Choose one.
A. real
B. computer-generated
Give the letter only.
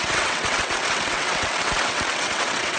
B